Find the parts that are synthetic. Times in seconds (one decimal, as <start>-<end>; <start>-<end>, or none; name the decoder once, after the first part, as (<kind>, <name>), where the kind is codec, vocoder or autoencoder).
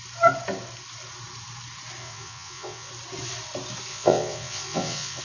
2.0-2.9 (vocoder, WaveNeXt); 3.9-5.2